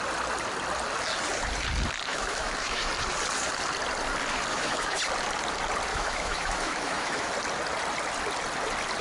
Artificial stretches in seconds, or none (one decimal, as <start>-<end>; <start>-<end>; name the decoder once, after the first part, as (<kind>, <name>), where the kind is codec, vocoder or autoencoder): 2.1-2.9 (autoencoder, DAC-VAE); 4.5-5.0; 5.9-7.3